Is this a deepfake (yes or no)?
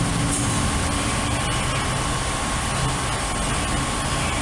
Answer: no